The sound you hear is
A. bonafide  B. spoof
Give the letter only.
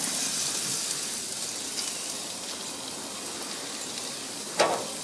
A